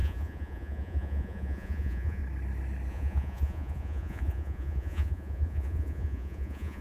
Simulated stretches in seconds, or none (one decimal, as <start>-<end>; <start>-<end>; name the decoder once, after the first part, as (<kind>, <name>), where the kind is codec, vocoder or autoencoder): 0.0-2.2 (vocoder, Vocos); 2.9-6.8